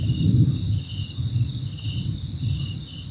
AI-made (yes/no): no